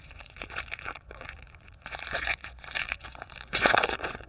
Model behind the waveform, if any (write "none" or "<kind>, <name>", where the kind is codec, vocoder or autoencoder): vocoder, Vocos